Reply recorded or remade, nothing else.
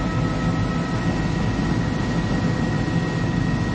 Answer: recorded